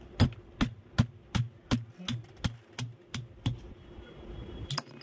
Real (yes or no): yes